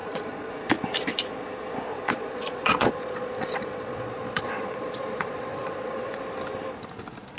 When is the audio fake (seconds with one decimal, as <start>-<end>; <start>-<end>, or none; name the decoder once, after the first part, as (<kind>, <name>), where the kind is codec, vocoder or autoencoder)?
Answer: 0.0-0.5 (vocoder, Vocos); 1.9-6.2